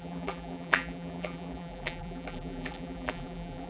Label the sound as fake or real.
fake